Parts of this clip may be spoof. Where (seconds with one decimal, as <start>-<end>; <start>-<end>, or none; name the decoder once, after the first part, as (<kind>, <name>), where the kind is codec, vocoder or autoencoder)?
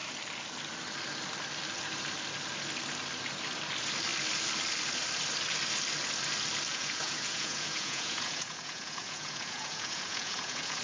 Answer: 6.7-10.8 (vocoder, Vocos)